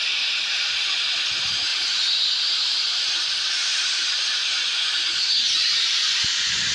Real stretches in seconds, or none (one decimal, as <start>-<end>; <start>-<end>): 0.0-4.4; 4.9-5.9